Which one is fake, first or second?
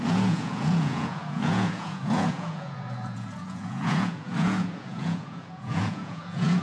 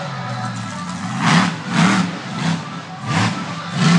first